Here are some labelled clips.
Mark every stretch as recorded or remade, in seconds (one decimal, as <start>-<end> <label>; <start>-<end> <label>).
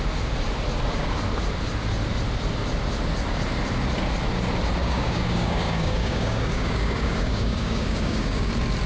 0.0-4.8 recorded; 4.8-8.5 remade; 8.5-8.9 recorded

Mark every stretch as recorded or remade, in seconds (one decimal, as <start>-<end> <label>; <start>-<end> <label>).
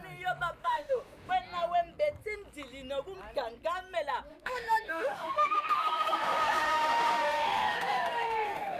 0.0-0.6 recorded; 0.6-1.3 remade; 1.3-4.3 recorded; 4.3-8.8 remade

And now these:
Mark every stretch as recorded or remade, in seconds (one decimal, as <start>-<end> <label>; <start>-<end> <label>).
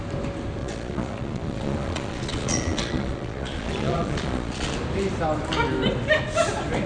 0.0-0.6 recorded; 0.6-4.7 remade; 4.7-6.9 recorded